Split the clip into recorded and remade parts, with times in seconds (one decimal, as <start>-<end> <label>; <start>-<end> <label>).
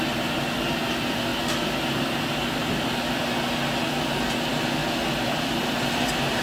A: 0.0-6.4 recorded